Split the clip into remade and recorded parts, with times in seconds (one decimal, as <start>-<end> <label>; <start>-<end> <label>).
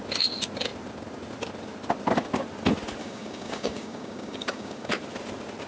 0.0-3.0 recorded; 3.0-4.9 remade; 4.9-5.7 recorded